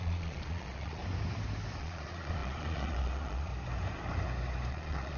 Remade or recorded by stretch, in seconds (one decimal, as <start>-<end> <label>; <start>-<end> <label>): 0.0-1.0 remade; 1.0-1.8 recorded; 1.8-3.5 remade; 3.5-4.7 recorded; 4.7-5.2 remade